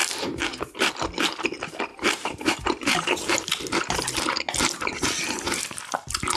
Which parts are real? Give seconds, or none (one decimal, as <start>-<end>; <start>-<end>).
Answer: 0.9-1.9; 3.6-6.4